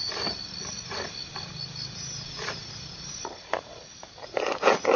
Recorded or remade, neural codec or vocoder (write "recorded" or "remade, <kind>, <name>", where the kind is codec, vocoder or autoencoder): recorded